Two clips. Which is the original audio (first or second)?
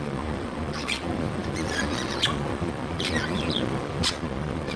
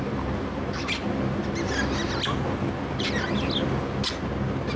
second